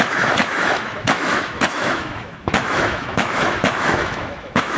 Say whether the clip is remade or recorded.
remade